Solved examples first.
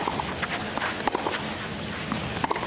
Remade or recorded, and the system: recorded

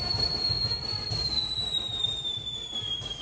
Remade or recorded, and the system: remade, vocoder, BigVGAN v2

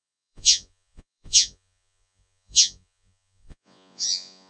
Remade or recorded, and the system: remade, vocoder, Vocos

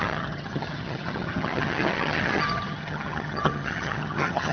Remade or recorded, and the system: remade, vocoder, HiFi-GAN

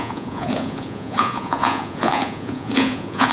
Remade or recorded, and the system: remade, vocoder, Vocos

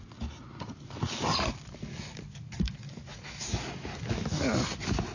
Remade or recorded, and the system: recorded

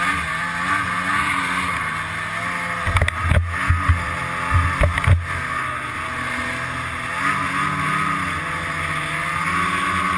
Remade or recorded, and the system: recorded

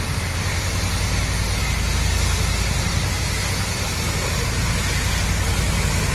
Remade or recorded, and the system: recorded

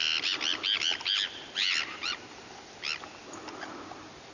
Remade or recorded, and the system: recorded